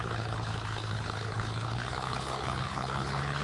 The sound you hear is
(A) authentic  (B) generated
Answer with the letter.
B